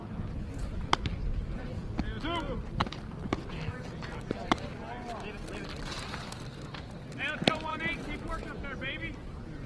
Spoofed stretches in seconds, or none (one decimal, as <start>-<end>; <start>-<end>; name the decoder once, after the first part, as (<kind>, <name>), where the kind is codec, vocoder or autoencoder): none